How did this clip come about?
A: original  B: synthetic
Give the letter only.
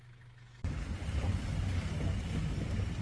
A